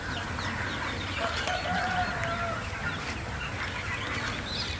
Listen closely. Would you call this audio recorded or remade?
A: recorded